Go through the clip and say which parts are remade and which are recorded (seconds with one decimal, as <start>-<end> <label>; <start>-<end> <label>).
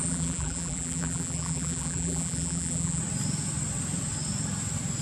0.0-3.0 remade; 3.0-5.0 recorded